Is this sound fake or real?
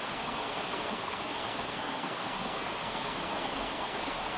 fake